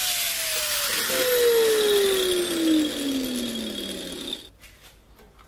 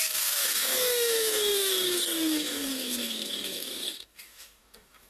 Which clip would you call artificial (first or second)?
second